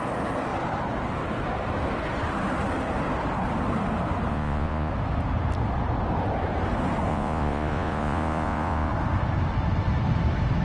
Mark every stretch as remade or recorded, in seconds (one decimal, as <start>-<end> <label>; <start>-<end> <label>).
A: 0.0-4.3 recorded; 4.3-4.9 remade; 4.9-7.1 recorded; 7.1-8.9 remade; 8.9-10.6 recorded